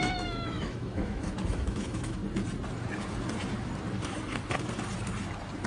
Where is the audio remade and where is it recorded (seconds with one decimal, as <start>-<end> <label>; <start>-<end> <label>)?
0.0-2.2 remade; 2.2-5.7 recorded